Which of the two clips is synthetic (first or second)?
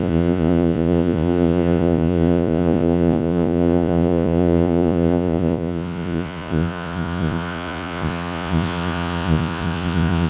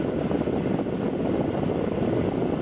first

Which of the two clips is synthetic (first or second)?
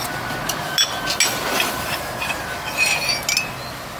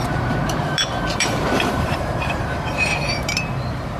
second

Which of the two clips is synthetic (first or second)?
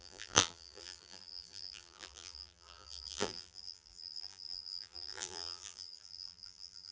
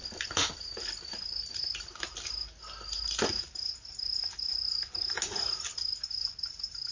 first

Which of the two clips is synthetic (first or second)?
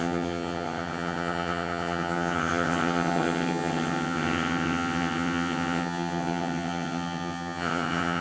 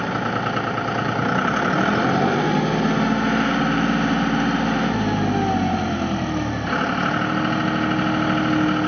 first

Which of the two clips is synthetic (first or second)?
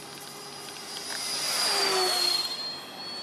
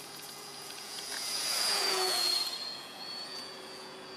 second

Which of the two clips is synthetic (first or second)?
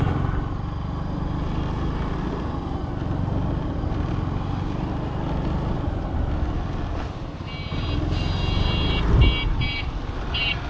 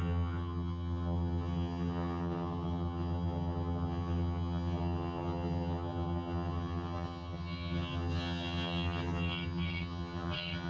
second